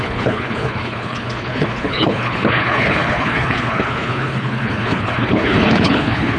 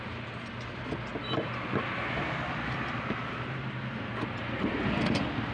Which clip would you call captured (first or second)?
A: second